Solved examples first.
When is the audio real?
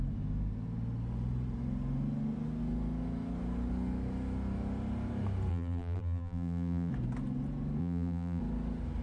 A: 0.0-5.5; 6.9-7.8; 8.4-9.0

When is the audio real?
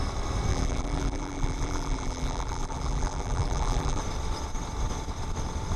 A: 0.0-0.5; 4.0-5.8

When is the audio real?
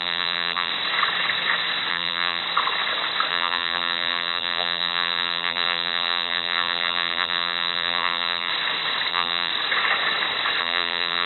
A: 0.7-1.9; 2.4-3.3; 8.5-9.1; 9.5-10.6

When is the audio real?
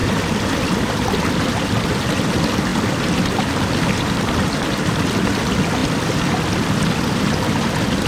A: 0.0-8.1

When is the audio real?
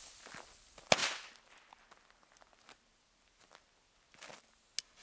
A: 0.0-5.0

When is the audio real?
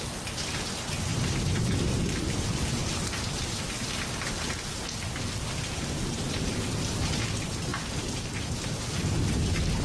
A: 0.0-1.1; 3.6-5.8; 6.8-7.7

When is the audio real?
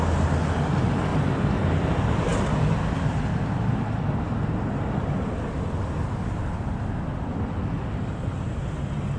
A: 0.0-9.2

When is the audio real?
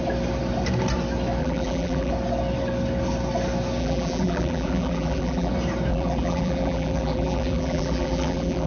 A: 0.0-1.4; 2.1-3.8; 5.5-5.9